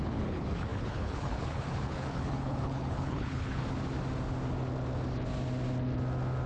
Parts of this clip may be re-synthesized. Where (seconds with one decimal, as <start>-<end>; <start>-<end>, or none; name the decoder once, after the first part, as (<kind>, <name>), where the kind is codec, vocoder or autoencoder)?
0.0-3.6 (codec, HILCodec)